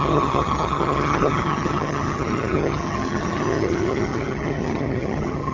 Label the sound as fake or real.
fake